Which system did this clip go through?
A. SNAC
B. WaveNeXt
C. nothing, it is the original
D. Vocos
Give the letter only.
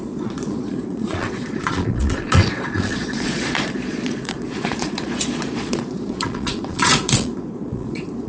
D